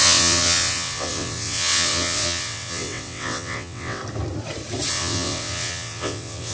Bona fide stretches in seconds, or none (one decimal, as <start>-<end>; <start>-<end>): 4.0-4.9